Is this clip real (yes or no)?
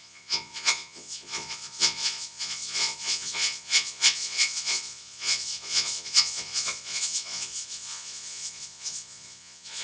no